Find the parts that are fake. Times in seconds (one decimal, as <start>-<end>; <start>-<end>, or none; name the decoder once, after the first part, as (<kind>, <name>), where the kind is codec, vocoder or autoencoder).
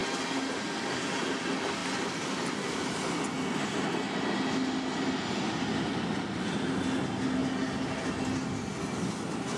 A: none